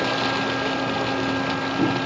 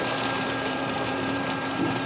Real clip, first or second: first